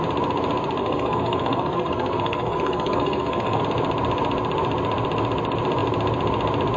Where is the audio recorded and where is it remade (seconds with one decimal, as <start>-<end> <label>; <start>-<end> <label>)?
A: 0.0-0.8 recorded; 0.8-3.6 remade; 3.6-6.8 recorded